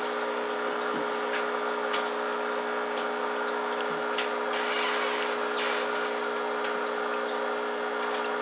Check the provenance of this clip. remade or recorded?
recorded